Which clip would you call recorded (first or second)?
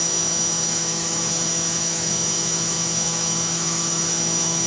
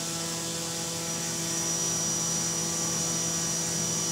second